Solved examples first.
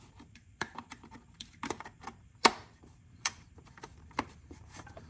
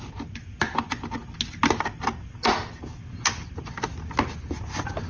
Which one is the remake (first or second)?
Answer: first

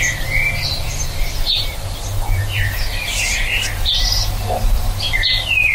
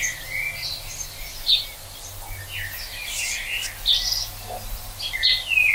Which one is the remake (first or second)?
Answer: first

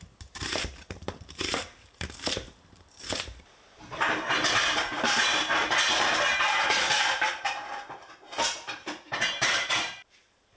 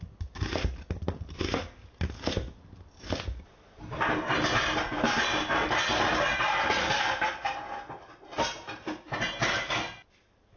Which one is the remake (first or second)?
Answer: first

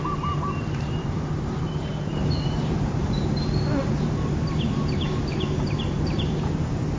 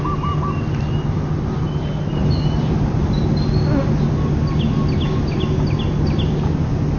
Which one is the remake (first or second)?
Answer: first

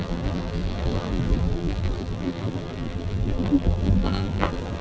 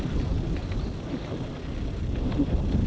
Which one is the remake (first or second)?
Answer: first